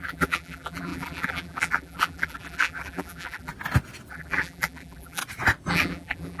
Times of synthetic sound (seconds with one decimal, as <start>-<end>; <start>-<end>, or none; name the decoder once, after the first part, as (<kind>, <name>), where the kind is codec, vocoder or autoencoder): 0.0-3.5 (vocoder, BigVGAN v2); 4.1-5.2; 5.7-6.4